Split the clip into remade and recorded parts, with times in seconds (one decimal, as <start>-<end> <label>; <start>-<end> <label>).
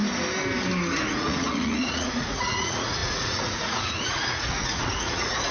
0.0-1.1 recorded; 1.1-5.5 remade